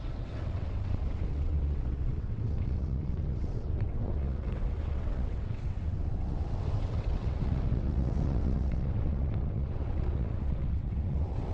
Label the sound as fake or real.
fake